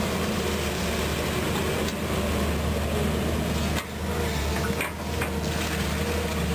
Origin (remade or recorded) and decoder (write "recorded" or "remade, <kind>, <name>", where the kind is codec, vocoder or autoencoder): recorded